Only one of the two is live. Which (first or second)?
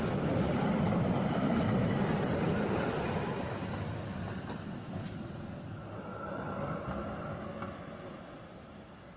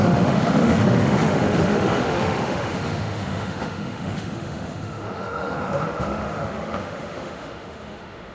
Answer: first